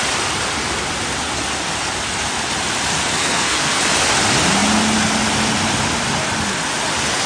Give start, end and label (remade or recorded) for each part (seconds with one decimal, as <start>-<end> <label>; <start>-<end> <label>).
0.0-3.2 recorded; 3.2-3.8 remade; 3.8-7.3 recorded